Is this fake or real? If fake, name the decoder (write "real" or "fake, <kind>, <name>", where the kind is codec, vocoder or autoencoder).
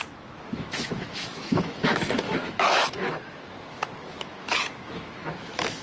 fake, autoencoder, DAC-VAE